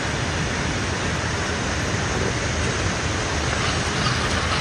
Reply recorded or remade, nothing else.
recorded